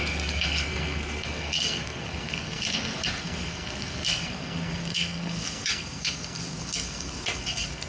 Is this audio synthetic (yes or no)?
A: yes